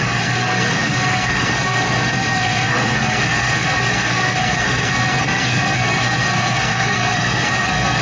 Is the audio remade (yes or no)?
yes